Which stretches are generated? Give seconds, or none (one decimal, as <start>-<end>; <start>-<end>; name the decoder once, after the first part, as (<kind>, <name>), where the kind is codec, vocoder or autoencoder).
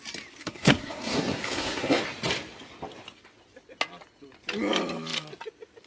0.4-2.0 (codec, SNAC)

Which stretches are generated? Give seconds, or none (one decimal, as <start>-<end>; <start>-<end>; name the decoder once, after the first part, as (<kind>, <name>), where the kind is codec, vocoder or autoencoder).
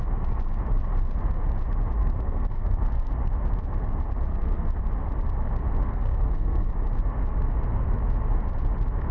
2.0-3.1 (codec, SNAC); 4.3-4.8; 5.8-6.7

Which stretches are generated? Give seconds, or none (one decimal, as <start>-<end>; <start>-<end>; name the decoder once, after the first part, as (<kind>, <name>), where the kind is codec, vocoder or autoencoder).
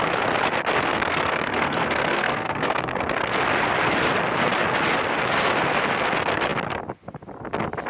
0.9-3.0 (codec, SNAC)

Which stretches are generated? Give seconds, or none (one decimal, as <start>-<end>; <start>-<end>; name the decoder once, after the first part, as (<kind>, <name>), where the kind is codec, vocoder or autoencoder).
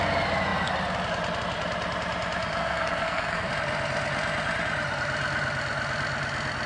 2.6-3.5 (codec, SNAC)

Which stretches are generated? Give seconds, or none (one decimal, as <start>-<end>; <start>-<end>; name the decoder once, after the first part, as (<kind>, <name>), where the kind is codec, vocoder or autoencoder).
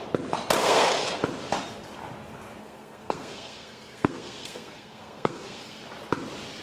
0.6-1.2 (codec, SNAC); 2.6-5.8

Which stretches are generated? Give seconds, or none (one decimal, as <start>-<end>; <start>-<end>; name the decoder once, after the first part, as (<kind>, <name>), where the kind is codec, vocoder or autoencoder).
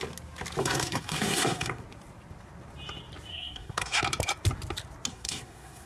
0.6-1.8 (codec, SNAC); 3.3-4.0; 5.1-5.9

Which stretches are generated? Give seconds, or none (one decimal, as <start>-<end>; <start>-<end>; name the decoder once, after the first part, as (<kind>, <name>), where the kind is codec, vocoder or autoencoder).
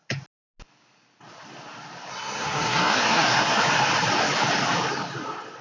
2.1-3.6 (codec, SNAC)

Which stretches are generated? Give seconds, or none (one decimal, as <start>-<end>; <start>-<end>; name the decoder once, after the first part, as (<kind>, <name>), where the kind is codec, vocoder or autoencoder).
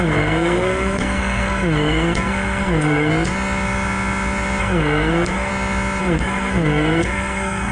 0.0-3.1 (codec, SNAC); 4.6-5.5; 6.0-7.7